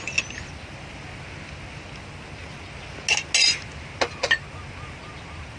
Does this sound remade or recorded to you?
recorded